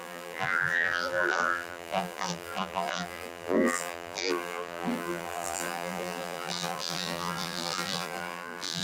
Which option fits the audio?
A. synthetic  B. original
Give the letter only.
A